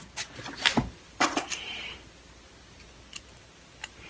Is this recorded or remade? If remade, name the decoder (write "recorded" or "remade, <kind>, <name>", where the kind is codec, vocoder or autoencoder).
recorded